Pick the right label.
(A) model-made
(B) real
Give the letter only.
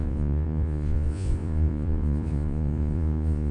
A